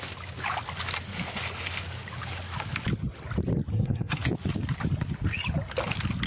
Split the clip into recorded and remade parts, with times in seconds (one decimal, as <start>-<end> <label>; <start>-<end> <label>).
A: 0.0-3.7 recorded; 3.7-4.2 remade; 4.2-6.3 recorded